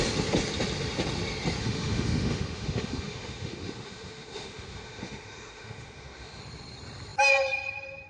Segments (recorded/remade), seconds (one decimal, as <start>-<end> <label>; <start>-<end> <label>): 0.0-1.6 recorded; 1.6-6.4 remade; 6.4-8.1 recorded